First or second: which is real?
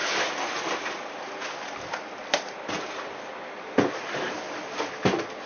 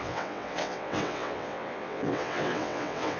first